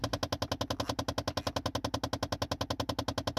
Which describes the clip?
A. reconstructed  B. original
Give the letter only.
B